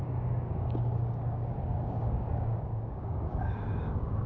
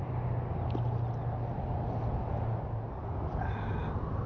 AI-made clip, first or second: first